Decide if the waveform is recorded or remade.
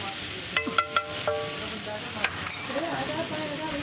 recorded